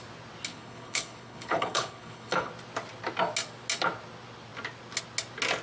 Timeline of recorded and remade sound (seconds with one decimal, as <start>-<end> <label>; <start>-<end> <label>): 0.0-0.5 recorded; 0.5-2.5 remade; 2.5-5.6 recorded